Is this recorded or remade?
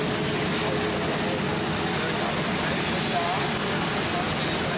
recorded